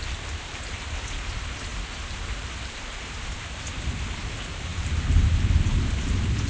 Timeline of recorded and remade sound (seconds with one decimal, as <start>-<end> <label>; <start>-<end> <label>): 0.0-6.5 remade